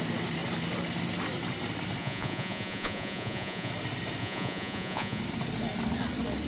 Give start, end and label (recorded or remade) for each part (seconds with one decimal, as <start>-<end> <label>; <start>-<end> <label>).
0.0-2.0 recorded; 2.0-3.7 remade; 3.7-4.2 recorded; 4.2-5.2 remade; 5.2-6.5 recorded